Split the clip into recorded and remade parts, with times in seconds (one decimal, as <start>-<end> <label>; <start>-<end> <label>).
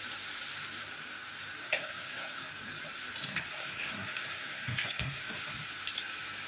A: 0.0-1.6 recorded; 1.6-2.5 remade; 2.5-3.2 recorded; 3.2-5.4 remade; 5.4-6.5 recorded